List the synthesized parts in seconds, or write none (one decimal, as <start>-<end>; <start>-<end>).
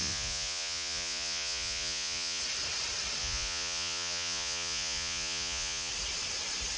0.0-2.4; 3.2-5.9